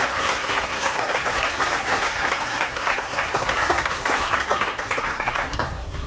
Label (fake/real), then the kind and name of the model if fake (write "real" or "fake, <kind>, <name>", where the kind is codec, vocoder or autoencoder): fake, codec, SNAC